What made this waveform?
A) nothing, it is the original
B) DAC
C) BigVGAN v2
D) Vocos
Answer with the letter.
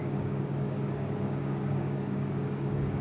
B